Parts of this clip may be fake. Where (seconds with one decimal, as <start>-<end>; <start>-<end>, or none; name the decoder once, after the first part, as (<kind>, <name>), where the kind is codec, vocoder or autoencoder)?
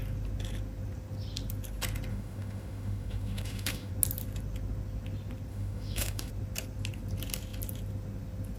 2.1-3.9 (autoencoder, DAC-VAE); 5.5-6.3